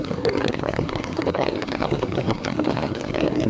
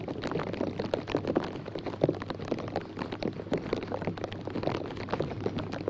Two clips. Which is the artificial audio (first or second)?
first